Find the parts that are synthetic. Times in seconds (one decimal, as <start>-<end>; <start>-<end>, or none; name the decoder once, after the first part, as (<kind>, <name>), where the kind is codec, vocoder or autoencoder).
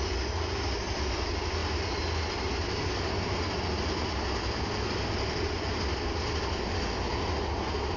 none